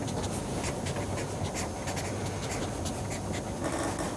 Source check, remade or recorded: recorded